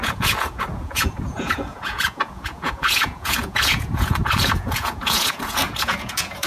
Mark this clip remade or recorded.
remade